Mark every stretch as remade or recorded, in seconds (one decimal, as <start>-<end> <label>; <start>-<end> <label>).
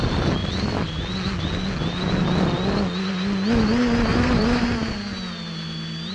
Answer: 0.0-4.1 recorded; 4.1-4.6 remade; 4.6-6.1 recorded